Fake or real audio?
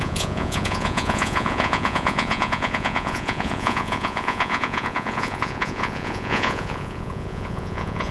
fake